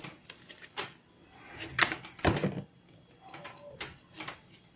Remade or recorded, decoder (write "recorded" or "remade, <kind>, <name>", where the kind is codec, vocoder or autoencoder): recorded